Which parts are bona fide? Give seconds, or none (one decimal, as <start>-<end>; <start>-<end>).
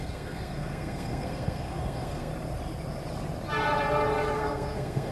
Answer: 2.3-4.3